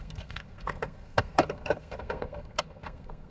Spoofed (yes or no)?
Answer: yes